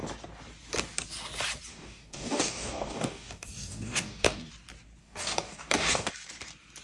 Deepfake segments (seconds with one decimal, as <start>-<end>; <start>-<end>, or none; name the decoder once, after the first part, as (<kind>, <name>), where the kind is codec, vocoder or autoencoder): 1.7-4.5 (codec, DAC); 5.0-6.1